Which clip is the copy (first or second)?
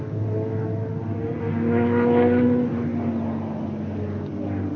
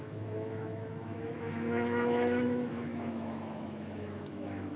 second